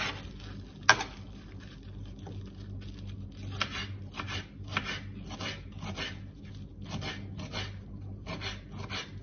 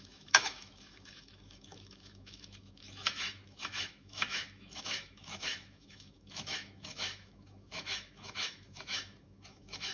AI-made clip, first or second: second